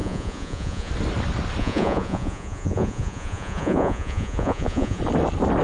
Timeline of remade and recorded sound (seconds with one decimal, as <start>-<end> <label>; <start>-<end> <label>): 0.0-0.9 remade; 0.9-1.6 recorded; 1.6-5.0 remade; 5.0-5.6 recorded